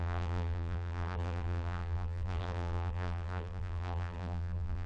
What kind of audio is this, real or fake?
fake